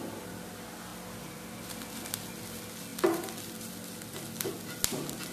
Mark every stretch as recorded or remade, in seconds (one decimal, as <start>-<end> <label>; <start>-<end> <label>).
0.0-5.3 recorded

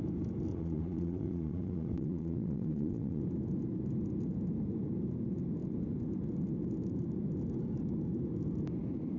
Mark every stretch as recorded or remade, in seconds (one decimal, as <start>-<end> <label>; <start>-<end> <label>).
0.0-0.5 recorded; 0.5-3.2 remade; 3.2-9.2 recorded

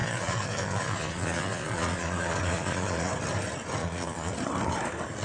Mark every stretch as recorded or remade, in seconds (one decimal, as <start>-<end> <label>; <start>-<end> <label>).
0.0-3.1 remade; 3.1-3.8 recorded; 3.8-4.3 remade; 4.3-5.2 recorded

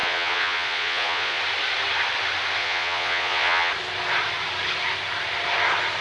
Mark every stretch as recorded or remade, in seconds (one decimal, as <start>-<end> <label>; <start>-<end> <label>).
0.0-1.4 remade; 1.4-2.6 recorded; 2.6-3.7 remade; 3.7-6.0 recorded

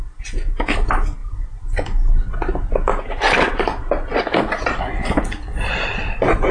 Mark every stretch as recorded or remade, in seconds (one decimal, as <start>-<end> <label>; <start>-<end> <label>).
0.0-6.5 recorded

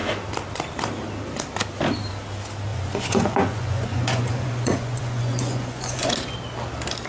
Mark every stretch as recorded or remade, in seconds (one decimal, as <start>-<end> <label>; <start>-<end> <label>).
0.0-2.7 recorded; 2.7-6.1 remade; 6.1-7.1 recorded

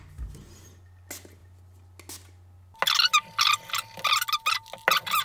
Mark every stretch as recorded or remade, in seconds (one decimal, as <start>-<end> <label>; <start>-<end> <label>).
0.0-5.2 recorded